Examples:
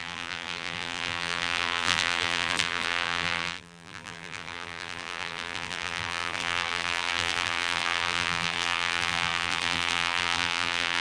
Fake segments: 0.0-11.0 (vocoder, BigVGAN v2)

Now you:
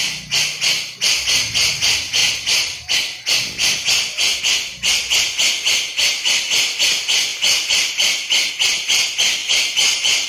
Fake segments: 7.3-8.5 (vocoder, BigVGAN v2); 9.4-10.3